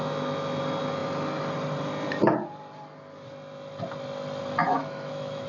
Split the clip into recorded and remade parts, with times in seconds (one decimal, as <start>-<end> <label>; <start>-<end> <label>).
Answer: 0.0-0.6 remade; 0.6-4.6 recorded; 4.6-5.5 remade